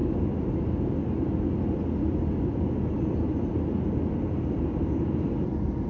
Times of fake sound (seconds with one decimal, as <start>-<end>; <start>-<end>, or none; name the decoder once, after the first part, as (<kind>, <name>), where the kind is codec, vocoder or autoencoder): none